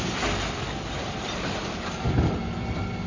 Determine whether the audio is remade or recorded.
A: remade